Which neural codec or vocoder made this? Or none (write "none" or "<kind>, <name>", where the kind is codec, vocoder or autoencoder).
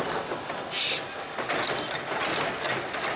none